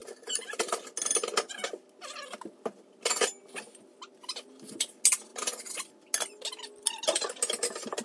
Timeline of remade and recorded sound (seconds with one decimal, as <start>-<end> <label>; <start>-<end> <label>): 0.0-0.8 remade; 0.8-8.0 recorded